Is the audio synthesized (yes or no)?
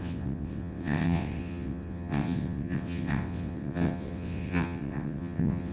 yes